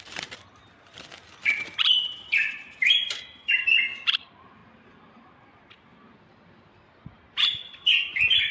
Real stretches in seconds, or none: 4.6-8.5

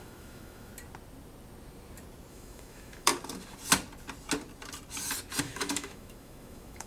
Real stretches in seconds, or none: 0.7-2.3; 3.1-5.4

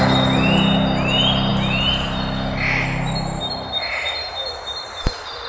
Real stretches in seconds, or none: 0.0-5.5